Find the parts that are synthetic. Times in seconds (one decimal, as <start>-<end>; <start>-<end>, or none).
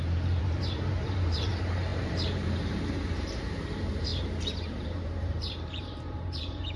0.0-6.8